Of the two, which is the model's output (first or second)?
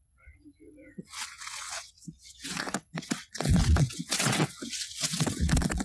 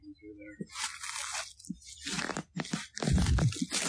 first